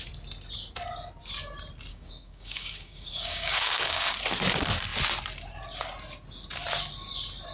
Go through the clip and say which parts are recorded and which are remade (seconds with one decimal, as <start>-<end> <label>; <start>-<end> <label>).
0.0-1.9 recorded; 1.9-4.2 remade; 4.2-7.5 recorded